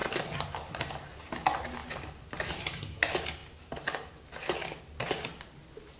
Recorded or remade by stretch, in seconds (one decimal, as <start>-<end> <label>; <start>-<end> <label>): 0.0-6.0 recorded